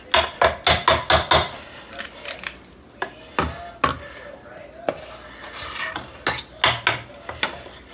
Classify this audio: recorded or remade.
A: recorded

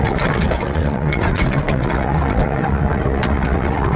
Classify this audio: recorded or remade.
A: remade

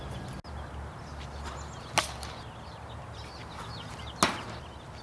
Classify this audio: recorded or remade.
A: recorded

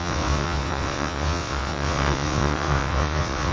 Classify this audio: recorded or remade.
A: remade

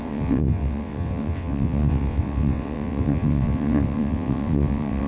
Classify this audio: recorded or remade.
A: remade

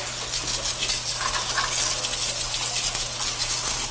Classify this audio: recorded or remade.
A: recorded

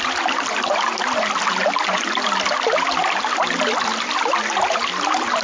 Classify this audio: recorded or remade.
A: recorded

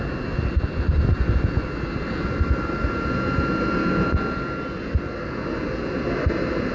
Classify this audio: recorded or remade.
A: recorded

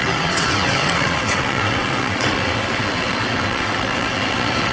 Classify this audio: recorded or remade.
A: remade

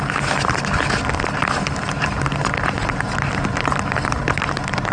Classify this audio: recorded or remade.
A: recorded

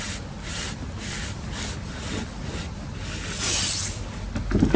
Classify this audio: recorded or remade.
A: recorded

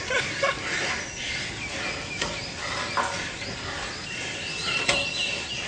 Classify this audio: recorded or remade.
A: recorded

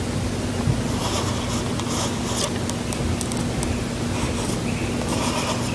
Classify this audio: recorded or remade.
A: recorded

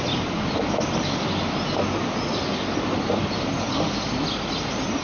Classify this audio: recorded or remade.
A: recorded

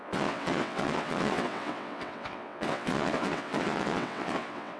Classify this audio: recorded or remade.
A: remade